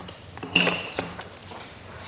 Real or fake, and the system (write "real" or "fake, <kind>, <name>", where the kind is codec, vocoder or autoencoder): fake, vocoder, BigVGAN v2